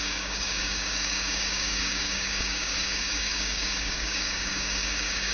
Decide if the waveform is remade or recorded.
remade